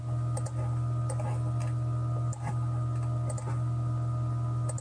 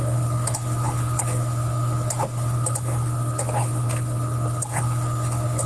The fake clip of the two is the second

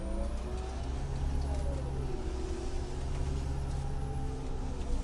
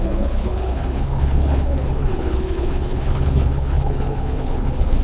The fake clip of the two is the second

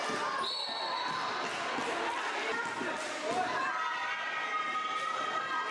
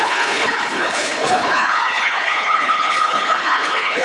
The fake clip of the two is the second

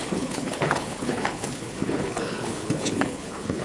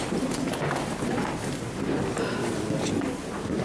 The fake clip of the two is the first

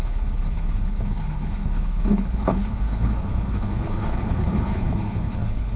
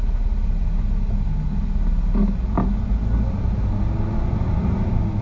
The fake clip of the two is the first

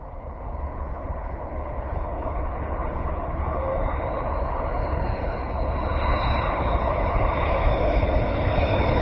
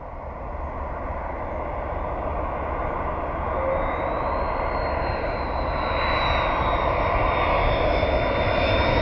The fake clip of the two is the first